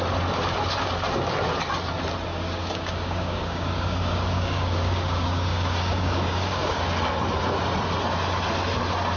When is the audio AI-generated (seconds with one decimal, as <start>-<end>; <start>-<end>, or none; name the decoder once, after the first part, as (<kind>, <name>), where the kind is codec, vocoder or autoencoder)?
2.3-6.8 (codec, DAC)

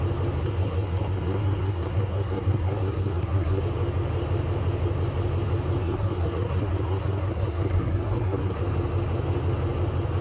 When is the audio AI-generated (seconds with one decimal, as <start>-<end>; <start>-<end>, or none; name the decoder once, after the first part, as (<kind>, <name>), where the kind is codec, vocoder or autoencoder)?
0.4-3.6 (codec, SNAC); 5.8-8.6

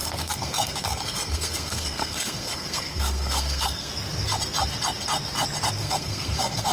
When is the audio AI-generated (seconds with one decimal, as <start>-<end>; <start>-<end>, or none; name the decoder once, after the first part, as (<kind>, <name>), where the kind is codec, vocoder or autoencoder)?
0.0-3.9 (codec, SNAC); 5.8-6.7

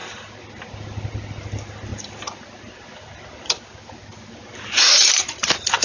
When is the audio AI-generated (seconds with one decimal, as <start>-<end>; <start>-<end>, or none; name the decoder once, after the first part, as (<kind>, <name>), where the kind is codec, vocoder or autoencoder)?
none

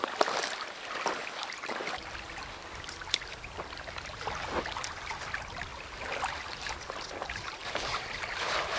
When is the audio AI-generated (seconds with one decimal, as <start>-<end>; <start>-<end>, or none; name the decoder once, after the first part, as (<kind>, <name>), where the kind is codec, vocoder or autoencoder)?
none

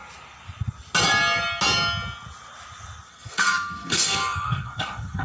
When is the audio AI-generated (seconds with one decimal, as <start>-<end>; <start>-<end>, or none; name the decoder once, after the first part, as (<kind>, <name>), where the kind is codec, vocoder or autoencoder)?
3.1-5.2 (codec, SNAC)

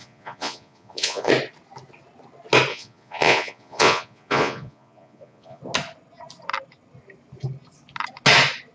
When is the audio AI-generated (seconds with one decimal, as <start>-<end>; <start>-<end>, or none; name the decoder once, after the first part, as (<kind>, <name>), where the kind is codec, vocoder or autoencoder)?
0.0-1.3 (vocoder, Vocos); 2.7-5.6